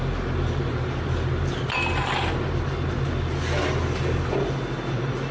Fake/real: real